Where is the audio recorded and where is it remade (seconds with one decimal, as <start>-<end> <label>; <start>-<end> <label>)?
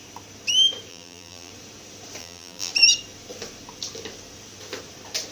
0.0-0.9 recorded; 0.9-1.5 remade; 1.5-2.2 recorded; 2.2-2.7 remade; 2.7-5.3 recorded